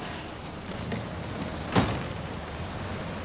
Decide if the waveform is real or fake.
real